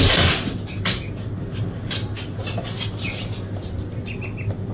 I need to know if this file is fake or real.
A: real